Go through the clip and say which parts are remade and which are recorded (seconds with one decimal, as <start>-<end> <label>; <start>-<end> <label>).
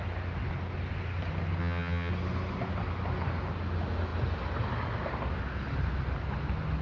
0.0-1.6 recorded; 1.6-2.1 remade; 2.1-6.8 recorded